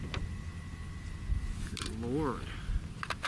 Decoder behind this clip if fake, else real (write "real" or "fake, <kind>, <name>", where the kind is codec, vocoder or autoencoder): real